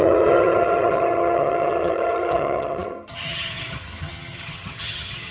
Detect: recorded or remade remade